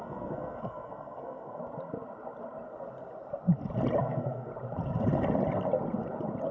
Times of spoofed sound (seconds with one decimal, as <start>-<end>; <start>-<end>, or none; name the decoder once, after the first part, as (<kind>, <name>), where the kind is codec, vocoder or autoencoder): 0.0-1.6 (codec, SNAC); 4.0-4.5